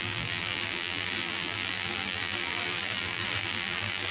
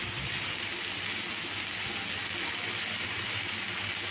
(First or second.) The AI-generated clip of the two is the first